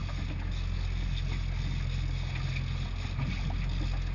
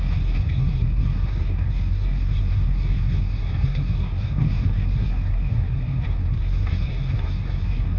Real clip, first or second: first